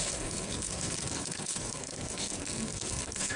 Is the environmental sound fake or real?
fake